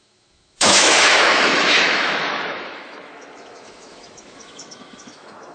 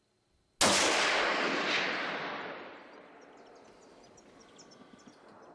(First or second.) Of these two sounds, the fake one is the first